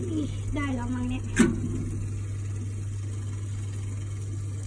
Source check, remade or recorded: recorded